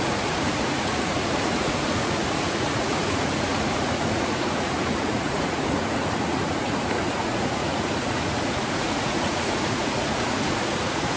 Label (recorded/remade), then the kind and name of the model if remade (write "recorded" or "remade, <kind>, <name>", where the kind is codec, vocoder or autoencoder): remade, vocoder, Vocos